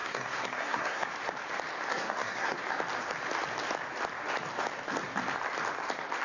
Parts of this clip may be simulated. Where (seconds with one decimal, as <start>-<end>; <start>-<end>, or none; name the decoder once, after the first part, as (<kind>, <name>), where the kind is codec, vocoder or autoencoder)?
0.0-1.1 (codec, SNAC); 1.9-2.6